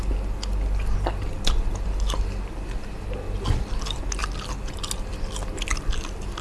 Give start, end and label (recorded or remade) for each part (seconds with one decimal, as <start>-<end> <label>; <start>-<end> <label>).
0.0-6.4 recorded